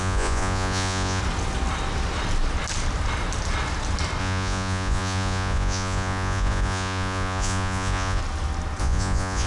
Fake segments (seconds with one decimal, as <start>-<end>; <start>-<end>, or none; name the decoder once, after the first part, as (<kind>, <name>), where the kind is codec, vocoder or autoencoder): 0.0-1.2 (vocoder, Vocos); 4.2-8.2; 8.8-9.5

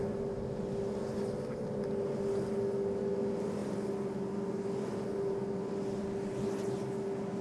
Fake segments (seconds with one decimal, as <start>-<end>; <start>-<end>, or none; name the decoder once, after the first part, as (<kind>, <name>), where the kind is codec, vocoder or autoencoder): none

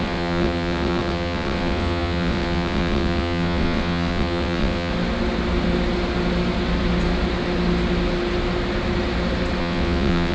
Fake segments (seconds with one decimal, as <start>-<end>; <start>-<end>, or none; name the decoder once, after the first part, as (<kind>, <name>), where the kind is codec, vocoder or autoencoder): 0.0-4.9 (vocoder, WaveNeXt); 9.6-10.3

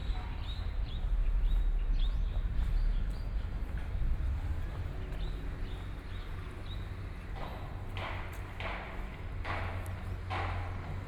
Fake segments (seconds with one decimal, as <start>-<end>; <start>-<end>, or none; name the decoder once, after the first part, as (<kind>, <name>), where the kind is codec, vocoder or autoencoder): 0.0-3.9 (vocoder, BigVGAN v2)

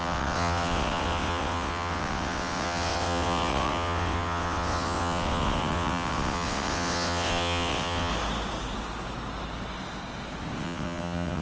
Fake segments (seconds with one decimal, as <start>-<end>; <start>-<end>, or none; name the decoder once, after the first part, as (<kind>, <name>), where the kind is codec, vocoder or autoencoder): 0.0-8.1 (vocoder, WaveNeXt); 10.6-11.4